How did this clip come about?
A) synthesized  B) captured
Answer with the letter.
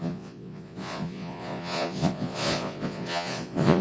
A